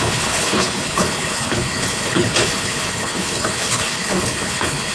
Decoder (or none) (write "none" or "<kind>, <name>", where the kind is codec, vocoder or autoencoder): codec, HILCodec